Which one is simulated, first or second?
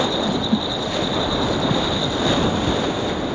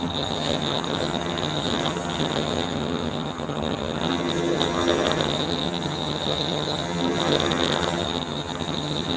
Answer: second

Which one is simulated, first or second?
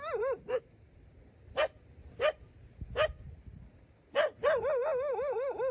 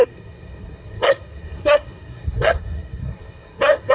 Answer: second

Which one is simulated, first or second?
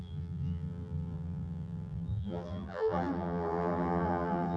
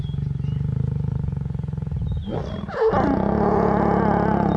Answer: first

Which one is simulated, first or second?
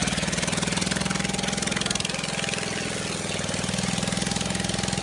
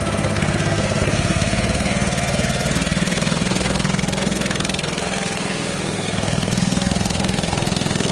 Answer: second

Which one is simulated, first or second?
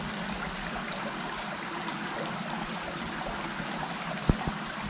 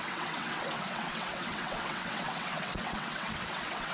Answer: second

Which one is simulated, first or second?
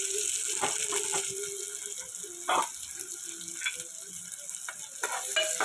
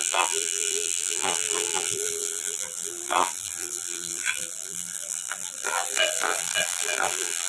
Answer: second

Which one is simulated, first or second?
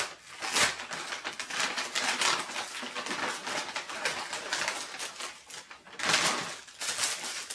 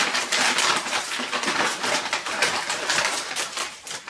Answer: second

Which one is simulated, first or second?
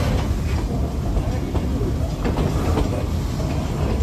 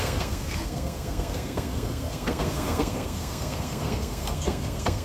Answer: second